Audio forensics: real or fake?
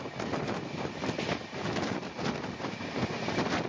real